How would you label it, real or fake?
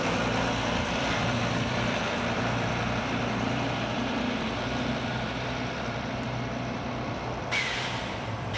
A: fake